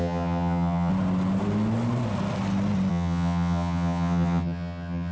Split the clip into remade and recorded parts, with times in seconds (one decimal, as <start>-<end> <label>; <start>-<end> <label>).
0.0-0.9 remade; 0.9-2.9 recorded; 2.9-5.1 remade